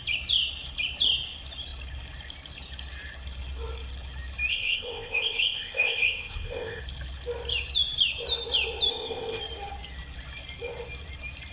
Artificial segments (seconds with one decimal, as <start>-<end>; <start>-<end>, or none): 4.5-6.8; 8.9-9.4